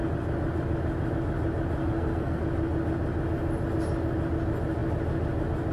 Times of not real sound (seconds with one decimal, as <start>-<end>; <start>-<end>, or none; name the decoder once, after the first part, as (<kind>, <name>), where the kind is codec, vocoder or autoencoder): 1.8-2.4 (codec, SNAC)